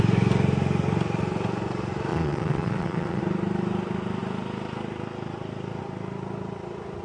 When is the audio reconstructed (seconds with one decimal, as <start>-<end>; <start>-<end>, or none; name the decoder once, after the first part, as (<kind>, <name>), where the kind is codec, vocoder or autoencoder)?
2.1-3.2 (vocoder, Vocos)